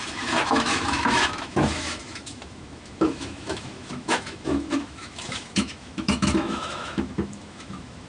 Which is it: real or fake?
fake